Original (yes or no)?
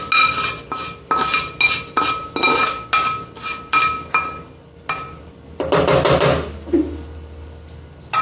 yes